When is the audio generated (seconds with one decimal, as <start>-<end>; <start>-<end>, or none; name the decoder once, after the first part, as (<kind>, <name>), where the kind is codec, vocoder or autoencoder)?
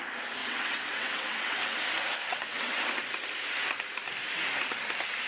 0.4-1.8 (vocoder, WaveNeXt); 2.2-2.8